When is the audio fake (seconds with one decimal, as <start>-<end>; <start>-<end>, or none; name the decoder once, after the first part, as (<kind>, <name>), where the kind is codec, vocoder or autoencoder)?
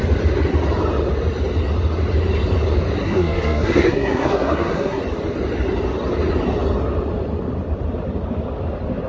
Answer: 3.0-5.0 (codec, SNAC)